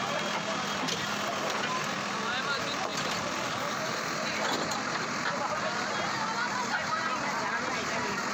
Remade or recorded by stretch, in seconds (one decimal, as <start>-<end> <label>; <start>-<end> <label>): 0.0-2.9 recorded; 2.9-5.9 remade; 5.9-8.3 recorded